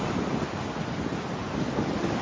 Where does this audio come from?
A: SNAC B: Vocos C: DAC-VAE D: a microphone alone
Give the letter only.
D